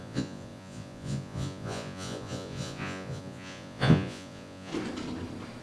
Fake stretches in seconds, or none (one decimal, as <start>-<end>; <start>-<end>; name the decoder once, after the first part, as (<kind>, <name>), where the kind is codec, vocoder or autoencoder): 0.0-4.7 (vocoder, Vocos)